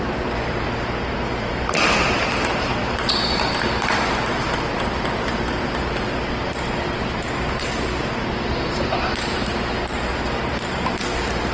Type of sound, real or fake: fake